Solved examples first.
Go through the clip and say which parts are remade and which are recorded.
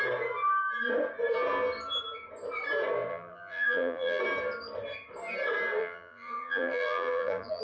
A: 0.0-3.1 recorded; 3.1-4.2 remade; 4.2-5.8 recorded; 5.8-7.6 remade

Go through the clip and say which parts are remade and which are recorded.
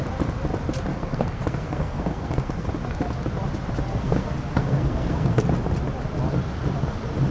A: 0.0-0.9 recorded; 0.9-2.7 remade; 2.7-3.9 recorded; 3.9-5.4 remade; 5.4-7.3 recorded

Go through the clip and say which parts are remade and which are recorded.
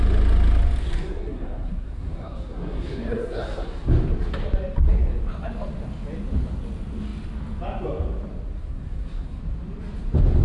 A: 0.0-0.8 recorded; 0.8-3.9 remade; 3.9-8.6 recorded; 8.6-9.4 remade; 9.4-10.4 recorded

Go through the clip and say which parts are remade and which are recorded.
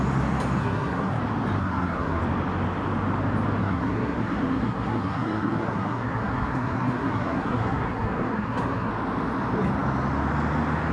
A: 0.0-0.6 recorded; 0.6-1.2 remade; 1.2-1.6 recorded; 1.6-2.2 remade; 2.2-3.6 recorded; 3.6-8.9 remade; 8.9-10.9 recorded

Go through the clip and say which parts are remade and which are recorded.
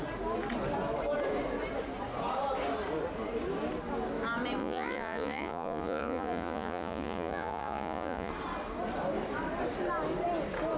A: 0.0-4.6 recorded; 4.6-8.3 remade; 8.3-10.8 recorded